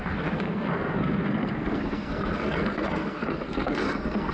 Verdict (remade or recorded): remade